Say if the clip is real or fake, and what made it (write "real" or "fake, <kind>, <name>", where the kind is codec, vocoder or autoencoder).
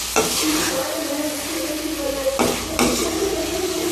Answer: real